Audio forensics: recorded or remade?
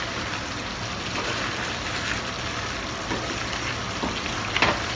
recorded